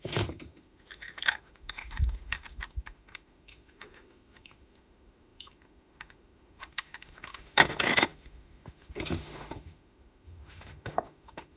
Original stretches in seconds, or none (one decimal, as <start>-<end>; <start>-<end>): none